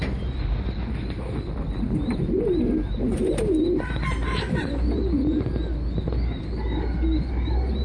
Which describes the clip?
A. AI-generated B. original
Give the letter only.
B